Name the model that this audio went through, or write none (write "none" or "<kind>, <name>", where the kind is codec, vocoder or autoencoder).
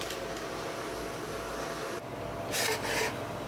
none